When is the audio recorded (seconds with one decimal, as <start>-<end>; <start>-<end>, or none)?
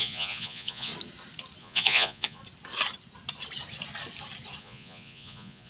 0.9-1.6; 2.4-4.6